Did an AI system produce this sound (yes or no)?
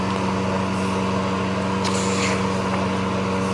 no